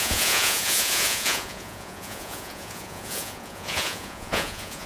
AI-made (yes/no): yes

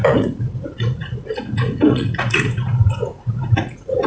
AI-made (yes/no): yes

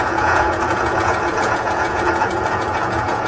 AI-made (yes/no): yes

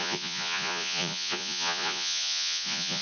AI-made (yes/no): yes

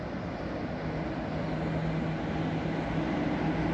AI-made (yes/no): no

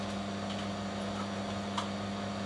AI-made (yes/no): no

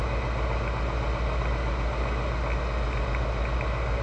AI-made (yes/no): no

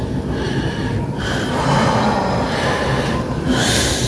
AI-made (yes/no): no